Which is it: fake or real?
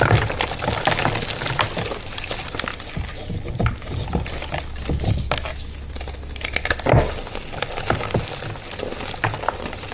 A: real